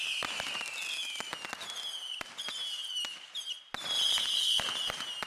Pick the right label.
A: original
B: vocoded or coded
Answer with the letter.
A